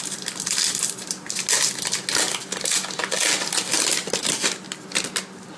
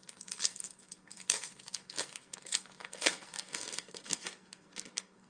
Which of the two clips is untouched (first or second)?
first